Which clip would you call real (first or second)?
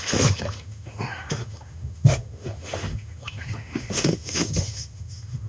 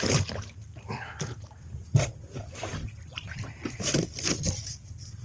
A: second